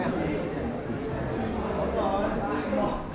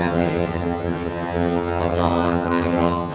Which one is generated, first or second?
second